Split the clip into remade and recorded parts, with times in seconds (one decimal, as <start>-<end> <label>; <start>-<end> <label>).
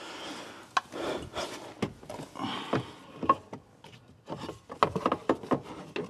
0.0-6.1 recorded